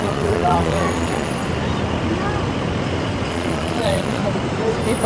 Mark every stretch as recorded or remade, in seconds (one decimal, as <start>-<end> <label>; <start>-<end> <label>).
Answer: 0.0-1.3 remade; 1.3-3.3 recorded; 3.3-4.2 remade; 4.2-5.1 recorded